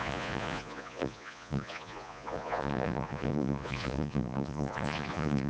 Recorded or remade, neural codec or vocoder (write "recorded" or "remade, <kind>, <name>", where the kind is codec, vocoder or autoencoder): remade, vocoder, Vocos